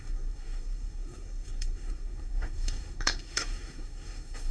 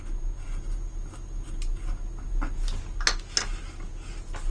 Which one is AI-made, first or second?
first